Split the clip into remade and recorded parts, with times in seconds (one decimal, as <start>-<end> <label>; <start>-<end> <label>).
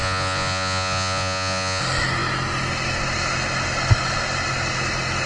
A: 0.0-1.8 remade; 1.8-5.3 recorded